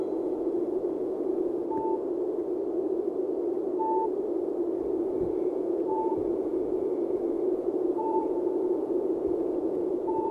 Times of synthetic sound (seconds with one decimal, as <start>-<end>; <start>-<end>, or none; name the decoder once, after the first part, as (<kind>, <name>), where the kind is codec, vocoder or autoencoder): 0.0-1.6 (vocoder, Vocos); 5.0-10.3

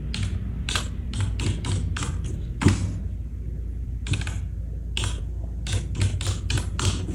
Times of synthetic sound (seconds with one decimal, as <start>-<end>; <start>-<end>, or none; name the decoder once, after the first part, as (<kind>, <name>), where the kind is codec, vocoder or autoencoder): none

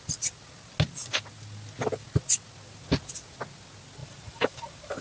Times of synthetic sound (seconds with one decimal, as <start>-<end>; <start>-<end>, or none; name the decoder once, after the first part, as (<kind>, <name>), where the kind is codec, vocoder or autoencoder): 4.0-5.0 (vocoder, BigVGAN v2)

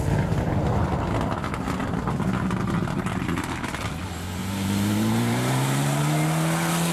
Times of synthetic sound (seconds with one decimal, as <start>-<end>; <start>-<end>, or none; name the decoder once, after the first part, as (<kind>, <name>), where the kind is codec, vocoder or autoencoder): 4.4-6.0 (vocoder, BigVGAN v2)

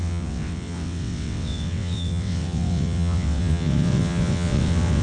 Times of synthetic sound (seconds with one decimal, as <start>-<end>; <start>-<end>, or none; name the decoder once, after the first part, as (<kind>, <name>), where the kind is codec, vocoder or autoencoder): 0.0-5.0 (vocoder, WaveNeXt)

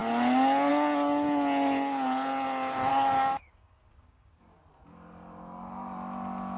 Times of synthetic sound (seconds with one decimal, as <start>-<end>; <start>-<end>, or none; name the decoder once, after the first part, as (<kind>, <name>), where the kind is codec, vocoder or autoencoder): 2.9-4.4 (codec, DAC)

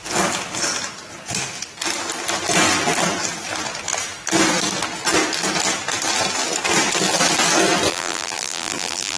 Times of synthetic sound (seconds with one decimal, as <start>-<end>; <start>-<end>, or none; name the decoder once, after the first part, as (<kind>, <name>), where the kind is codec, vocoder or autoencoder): 7.9-9.2 (vocoder, BigVGAN v2)